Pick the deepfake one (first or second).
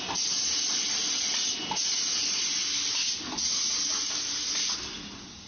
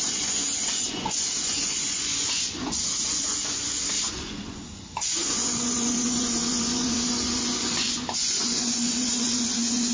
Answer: second